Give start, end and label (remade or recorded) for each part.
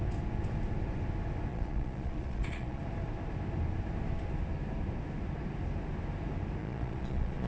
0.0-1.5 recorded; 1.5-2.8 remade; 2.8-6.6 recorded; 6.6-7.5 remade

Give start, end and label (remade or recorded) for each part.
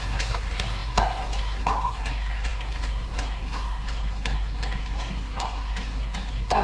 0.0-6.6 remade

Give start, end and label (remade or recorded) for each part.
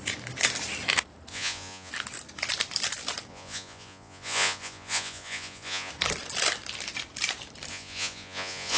0.0-1.3 recorded; 1.3-1.9 remade; 1.9-3.3 recorded; 3.3-5.9 remade; 5.9-7.7 recorded; 7.7-8.8 remade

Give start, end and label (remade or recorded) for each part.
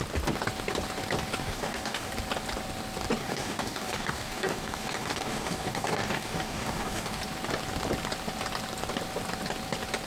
0.0-1.4 recorded; 1.4-2.1 remade; 2.1-3.2 recorded; 3.2-7.2 remade; 7.2-10.1 recorded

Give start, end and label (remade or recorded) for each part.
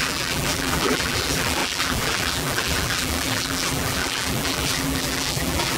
0.0-5.8 remade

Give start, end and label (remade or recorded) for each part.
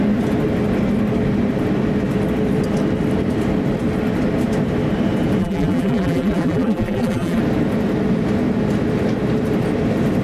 0.0-5.4 recorded; 5.4-7.4 remade; 7.4-10.2 recorded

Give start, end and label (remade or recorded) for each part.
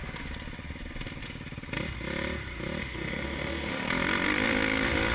0.0-2.8 recorded; 2.8-3.9 remade; 3.9-5.1 recorded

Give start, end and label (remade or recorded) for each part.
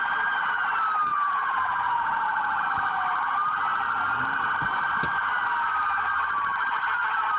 0.0-1.1 recorded; 1.1-2.6 remade; 2.6-7.4 recorded